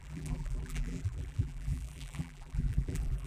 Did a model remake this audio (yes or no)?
yes